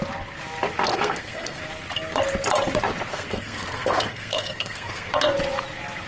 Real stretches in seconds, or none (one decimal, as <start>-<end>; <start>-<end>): 0.0-0.9; 1.6-3.1; 5.1-6.1